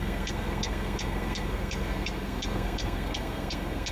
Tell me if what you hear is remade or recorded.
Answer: remade